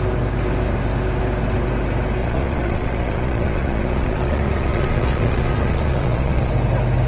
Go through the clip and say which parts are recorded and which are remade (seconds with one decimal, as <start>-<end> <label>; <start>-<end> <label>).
0.0-2.2 recorded; 2.2-6.5 remade; 6.5-7.1 recorded